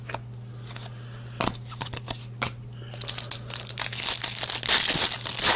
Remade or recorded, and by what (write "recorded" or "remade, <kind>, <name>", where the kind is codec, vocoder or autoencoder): recorded